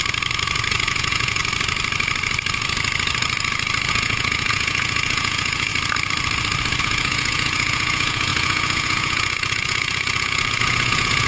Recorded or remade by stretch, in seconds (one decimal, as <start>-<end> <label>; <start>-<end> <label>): 0.0-0.7 recorded; 0.7-1.4 remade; 1.4-3.9 recorded; 3.9-5.7 remade; 5.7-6.8 recorded; 6.8-11.3 remade